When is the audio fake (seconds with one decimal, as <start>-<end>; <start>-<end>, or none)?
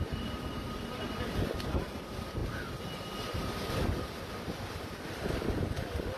none